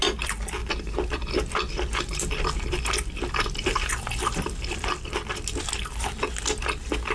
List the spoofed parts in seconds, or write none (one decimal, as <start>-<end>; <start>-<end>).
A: 0.6-4.9

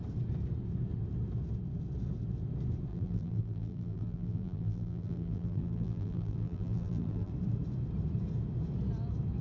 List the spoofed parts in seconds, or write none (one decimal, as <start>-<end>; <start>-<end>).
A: 2.9-7.3

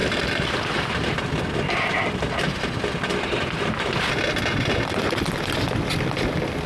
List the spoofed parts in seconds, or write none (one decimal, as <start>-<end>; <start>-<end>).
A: 0.0-4.0

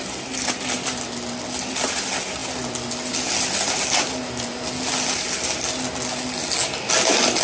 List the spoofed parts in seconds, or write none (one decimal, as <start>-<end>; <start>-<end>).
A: none

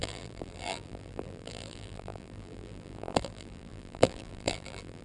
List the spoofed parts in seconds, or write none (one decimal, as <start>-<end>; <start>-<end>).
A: 0.0-5.0

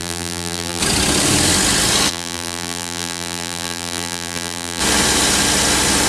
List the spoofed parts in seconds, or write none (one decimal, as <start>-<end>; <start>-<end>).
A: 0.0-0.8; 2.1-4.8

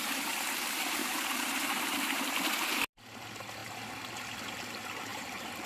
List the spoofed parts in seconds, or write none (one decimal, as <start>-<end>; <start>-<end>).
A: 1.0-2.3; 5.1-5.7

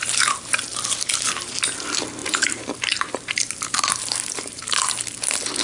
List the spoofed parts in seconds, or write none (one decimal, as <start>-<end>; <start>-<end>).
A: 2.2-4.6